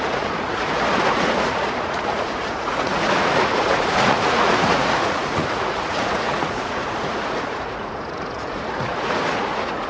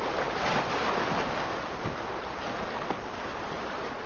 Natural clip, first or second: second